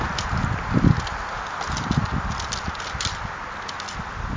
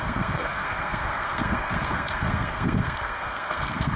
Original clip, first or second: first